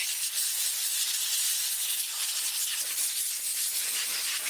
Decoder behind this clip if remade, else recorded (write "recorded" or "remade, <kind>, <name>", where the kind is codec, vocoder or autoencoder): recorded